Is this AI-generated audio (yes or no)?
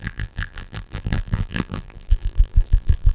yes